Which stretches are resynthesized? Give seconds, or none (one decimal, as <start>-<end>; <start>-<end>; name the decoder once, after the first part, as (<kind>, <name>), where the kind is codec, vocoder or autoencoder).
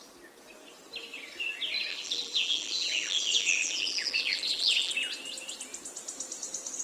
1.9-4.9 (vocoder, BigVGAN v2)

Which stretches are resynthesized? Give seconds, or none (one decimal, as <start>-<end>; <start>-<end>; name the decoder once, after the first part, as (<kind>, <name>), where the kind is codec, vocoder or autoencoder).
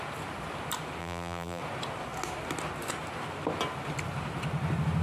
1.0-1.6 (vocoder, BigVGAN v2)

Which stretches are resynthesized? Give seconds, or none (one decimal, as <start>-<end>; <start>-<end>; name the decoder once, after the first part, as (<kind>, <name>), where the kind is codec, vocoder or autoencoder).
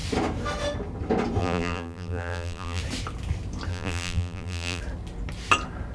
1.4-2.8 (vocoder, BigVGAN v2); 3.7-4.8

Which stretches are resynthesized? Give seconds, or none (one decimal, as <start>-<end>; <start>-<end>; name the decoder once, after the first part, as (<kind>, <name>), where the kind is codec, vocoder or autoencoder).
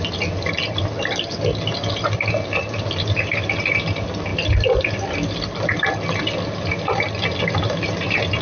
none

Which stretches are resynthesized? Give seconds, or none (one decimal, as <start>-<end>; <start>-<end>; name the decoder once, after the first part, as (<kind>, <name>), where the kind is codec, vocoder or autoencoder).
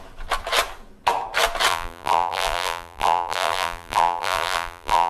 1.7-5.1 (vocoder, BigVGAN v2)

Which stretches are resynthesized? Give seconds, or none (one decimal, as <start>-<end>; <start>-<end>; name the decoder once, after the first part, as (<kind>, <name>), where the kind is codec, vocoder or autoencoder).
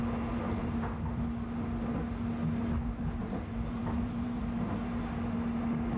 0.6-1.2 (vocoder, BigVGAN v2); 3.2-5.0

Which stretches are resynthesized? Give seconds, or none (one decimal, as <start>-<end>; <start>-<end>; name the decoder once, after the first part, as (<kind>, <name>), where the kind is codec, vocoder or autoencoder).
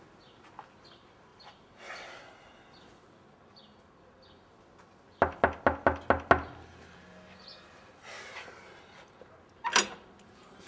none